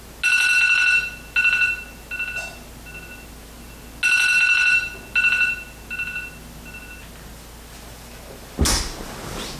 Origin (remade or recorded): recorded